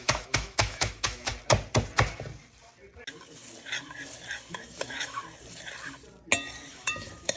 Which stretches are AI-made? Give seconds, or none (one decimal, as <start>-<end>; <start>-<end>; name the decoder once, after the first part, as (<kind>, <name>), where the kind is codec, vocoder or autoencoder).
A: 0.0-1.3 (autoencoder, DAC-VAE); 4.5-5.2; 6.7-7.4